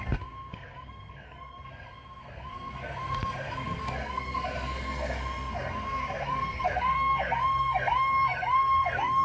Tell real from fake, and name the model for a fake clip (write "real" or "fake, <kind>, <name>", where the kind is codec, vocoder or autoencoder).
fake, codec, SNAC